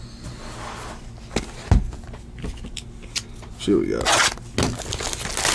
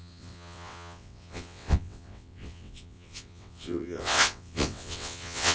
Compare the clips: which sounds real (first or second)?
first